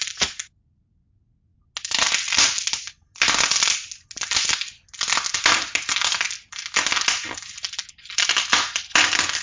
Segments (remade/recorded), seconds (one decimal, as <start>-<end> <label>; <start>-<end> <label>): 0.0-9.4 recorded

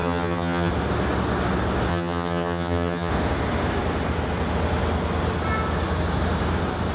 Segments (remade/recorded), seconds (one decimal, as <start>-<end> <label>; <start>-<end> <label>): 0.0-0.7 remade; 0.7-1.9 recorded; 1.9-3.1 remade; 3.1-6.9 recorded

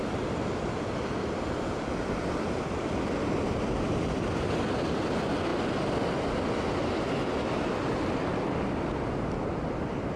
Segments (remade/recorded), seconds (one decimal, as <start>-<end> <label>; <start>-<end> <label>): 0.0-10.2 recorded

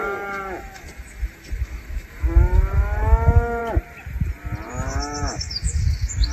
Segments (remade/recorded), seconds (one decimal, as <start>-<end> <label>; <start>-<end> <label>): 0.0-3.6 remade; 3.6-4.7 recorded; 4.7-6.3 remade